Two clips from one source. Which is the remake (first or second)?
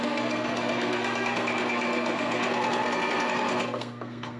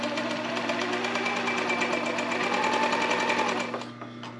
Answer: first